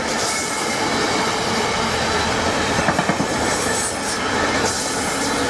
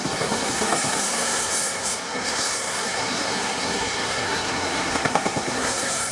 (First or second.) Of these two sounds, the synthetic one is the second